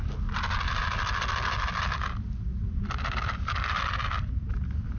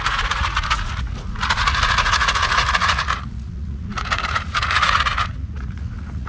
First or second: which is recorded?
first